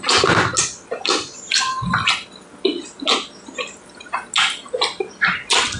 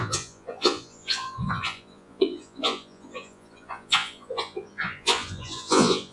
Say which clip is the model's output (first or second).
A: second